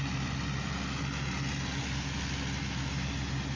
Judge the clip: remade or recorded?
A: recorded